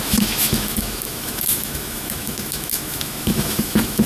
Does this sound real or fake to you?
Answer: fake